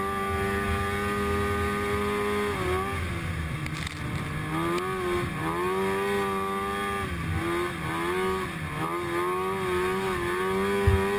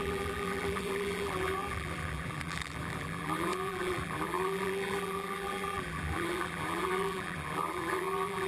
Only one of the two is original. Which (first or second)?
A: first